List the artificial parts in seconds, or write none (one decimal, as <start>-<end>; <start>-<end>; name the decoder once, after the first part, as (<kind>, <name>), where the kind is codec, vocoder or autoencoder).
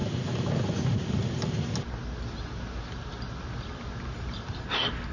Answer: none